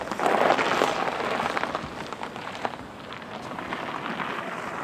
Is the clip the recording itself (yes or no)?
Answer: yes